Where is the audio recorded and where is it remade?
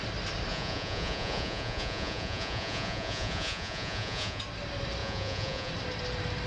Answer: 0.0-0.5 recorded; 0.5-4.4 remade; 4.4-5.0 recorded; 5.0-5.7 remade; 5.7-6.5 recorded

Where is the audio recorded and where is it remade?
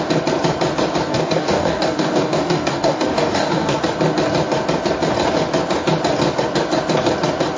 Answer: 0.0-1.1 recorded; 1.1-3.8 remade; 3.8-7.6 recorded